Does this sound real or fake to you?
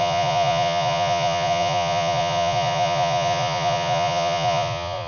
fake